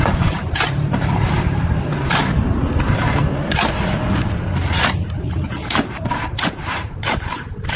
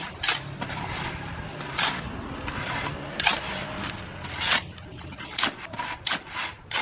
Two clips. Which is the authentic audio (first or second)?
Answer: second